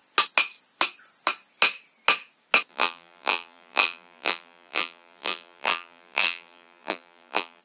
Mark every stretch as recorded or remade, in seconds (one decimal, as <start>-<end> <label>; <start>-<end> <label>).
0.0-2.7 recorded; 2.7-7.6 remade